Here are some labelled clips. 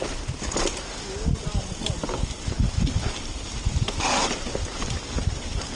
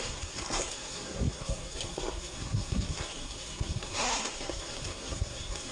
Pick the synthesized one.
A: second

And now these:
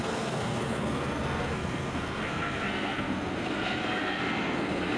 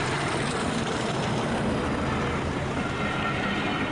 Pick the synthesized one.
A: first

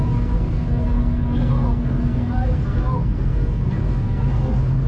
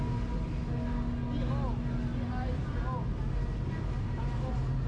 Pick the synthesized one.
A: first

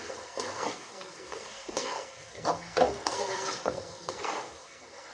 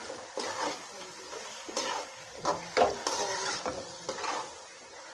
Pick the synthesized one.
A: first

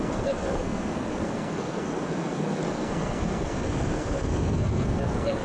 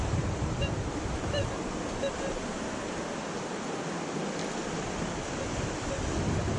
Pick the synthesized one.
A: first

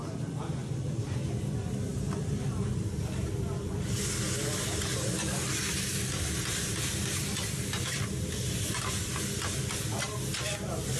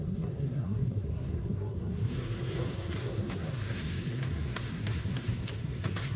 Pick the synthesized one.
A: second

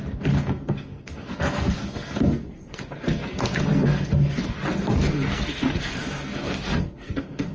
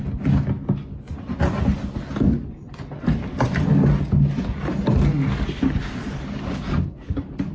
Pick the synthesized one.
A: first